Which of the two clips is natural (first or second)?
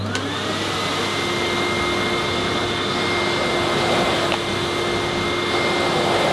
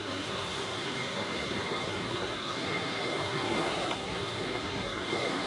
first